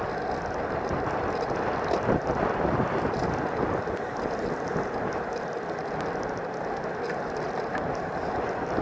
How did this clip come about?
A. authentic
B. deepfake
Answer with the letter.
A